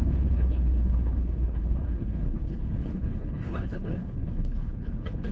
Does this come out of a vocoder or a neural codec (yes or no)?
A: yes